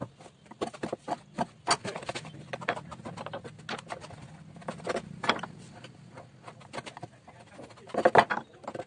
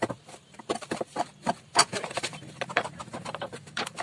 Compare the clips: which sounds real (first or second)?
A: first